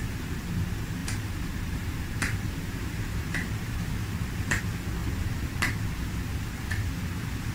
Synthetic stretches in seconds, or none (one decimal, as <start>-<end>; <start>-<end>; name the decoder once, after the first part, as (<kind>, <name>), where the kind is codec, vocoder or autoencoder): 1.0-4.6 (vocoder, BigVGAN v2); 5.0-5.8